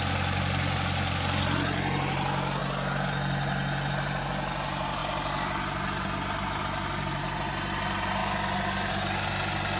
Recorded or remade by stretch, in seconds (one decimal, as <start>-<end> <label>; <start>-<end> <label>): 0.0-9.8 recorded